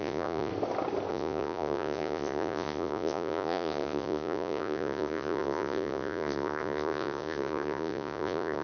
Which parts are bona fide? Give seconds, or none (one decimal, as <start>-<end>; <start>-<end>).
0.5-1.1